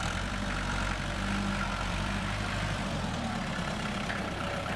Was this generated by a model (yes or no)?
yes